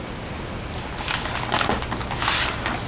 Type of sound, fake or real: real